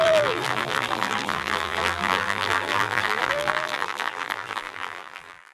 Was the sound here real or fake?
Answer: fake